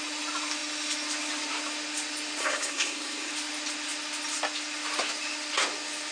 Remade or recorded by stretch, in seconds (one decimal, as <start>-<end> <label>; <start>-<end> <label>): 0.0-2.4 recorded; 2.4-3.3 remade; 3.3-6.1 recorded